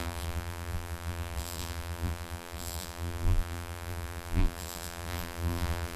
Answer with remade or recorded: remade